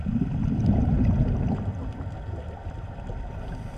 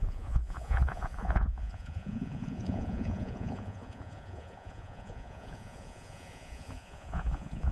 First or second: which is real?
first